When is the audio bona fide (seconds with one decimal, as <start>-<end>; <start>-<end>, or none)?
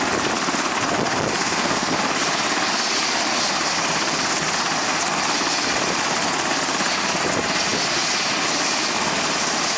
0.0-1.4; 2.0-9.8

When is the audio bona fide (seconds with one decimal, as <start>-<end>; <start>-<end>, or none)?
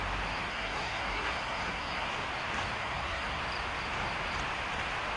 0.0-0.5; 2.1-2.8; 3.4-5.2